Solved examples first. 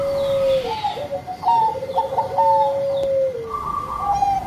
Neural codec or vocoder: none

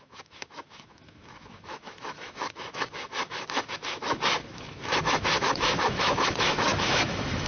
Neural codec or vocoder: autoencoder, DAC-VAE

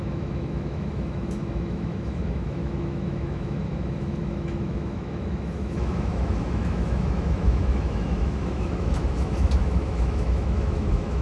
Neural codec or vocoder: autoencoder, DAC-VAE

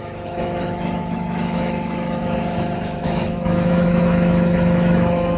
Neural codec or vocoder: autoencoder, DAC-VAE